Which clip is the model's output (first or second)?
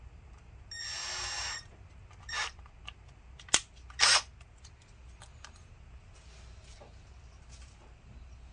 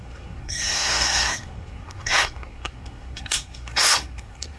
second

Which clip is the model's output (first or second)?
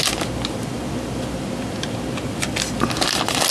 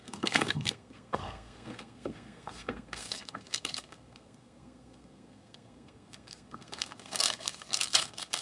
second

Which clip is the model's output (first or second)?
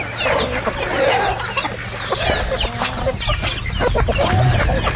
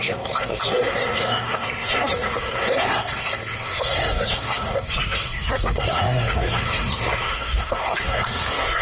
second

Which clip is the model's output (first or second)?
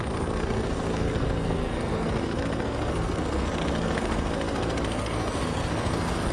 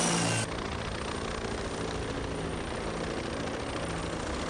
first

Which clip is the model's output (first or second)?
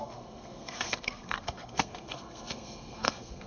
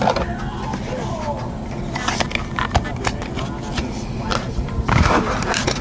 first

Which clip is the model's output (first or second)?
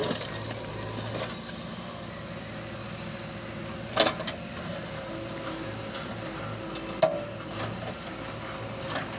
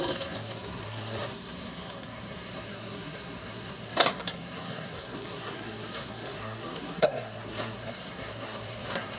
second